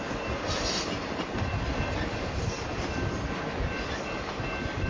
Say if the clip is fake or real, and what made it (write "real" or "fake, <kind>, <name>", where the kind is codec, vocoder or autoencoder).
real